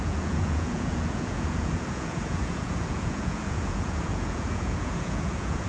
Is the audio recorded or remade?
remade